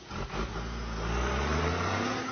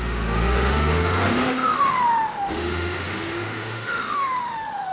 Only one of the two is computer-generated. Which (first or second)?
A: second